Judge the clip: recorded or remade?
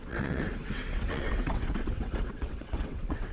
remade